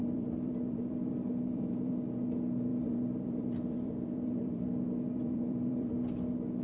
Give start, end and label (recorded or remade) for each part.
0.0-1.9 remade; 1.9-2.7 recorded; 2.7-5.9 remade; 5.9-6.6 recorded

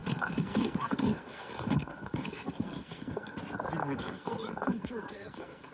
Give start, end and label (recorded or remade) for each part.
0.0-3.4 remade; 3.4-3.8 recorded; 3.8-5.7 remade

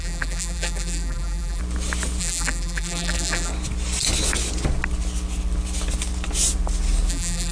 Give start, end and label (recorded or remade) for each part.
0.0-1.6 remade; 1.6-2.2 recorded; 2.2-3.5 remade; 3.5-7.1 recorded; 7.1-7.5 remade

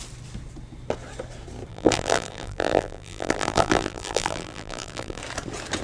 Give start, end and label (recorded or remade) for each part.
0.0-1.7 recorded; 1.7-5.2 remade; 5.2-5.8 recorded

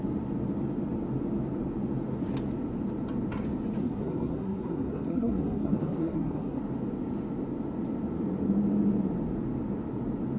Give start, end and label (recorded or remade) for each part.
0.0-3.8 recorded; 3.8-6.6 remade; 6.6-10.4 recorded